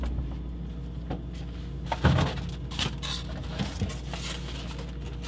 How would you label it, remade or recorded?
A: recorded